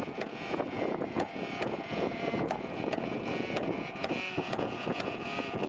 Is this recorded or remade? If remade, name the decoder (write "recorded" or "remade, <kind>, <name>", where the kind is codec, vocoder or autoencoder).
remade, vocoder, Vocos